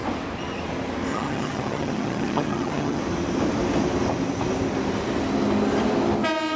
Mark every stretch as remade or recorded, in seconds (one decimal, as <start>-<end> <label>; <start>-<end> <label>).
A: 0.0-1.1 recorded; 1.1-3.0 remade; 3.0-6.6 recorded